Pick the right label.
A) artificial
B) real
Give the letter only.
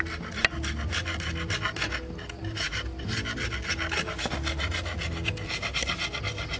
B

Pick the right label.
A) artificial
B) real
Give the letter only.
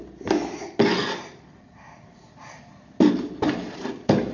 B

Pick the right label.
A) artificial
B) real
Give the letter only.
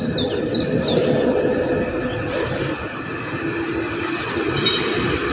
B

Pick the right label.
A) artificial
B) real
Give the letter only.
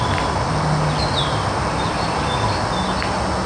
B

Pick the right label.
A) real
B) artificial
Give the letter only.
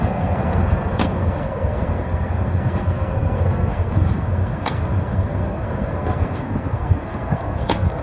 B